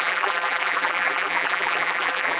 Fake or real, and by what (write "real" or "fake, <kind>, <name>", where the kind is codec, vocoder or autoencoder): fake, vocoder, BigVGAN v2